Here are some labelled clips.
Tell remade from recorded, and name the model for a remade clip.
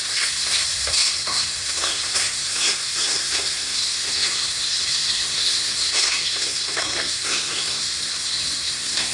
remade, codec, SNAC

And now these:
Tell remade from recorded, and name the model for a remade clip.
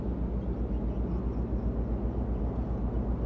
recorded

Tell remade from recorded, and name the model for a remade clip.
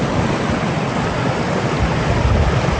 recorded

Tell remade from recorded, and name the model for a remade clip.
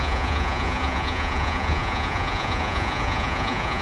remade, vocoder, Vocos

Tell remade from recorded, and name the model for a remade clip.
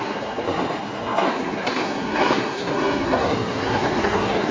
remade, codec, SNAC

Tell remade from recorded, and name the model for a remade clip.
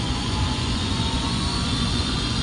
remade, vocoder, Vocos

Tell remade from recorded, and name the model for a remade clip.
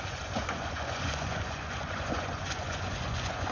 remade, vocoder, Vocos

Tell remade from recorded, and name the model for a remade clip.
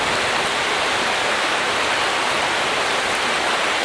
recorded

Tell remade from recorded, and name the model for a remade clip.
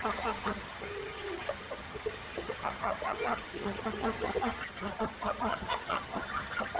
remade, vocoder, HiFi-GAN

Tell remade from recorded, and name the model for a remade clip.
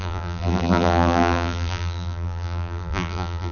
remade, vocoder, BigVGAN v2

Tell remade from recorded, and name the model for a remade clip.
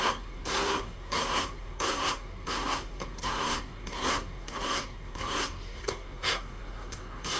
remade, codec, SNAC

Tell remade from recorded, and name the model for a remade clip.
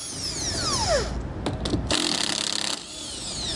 recorded